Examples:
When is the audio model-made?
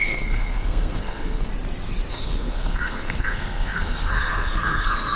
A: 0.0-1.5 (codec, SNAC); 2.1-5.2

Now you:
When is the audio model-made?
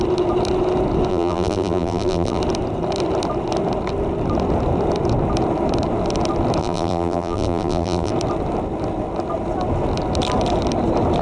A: 1.1-2.4 (vocoder, BigVGAN v2); 6.6-8.1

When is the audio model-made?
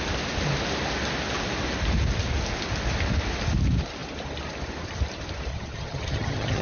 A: 5.5-6.6 (vocoder, HiFi-GAN)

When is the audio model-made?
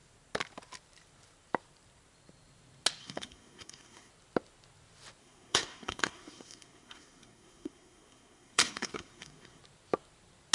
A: 3.0-4.1 (codec, SNAC); 5.2-9.6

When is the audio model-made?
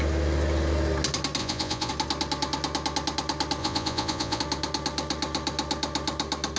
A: 1.4-1.9 (vocoder, Vocos); 3.6-4.4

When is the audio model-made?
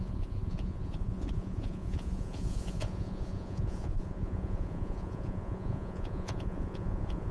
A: 0.0-7.3 (vocoder, Vocos)